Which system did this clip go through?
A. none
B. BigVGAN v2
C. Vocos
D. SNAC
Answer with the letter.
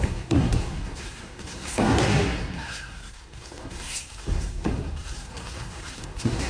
D